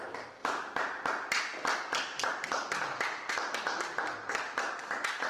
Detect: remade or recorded recorded